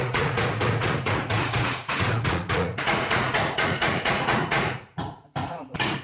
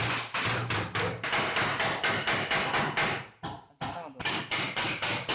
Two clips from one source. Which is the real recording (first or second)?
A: second